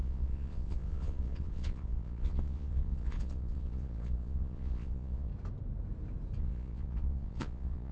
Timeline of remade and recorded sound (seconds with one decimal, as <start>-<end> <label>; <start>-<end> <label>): 0.0-5.3 remade; 5.3-6.4 recorded; 6.4-7.9 remade